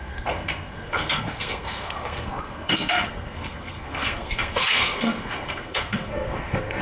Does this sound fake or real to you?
fake